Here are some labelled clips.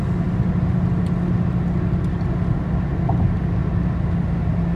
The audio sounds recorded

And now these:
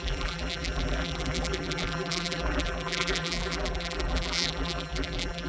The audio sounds remade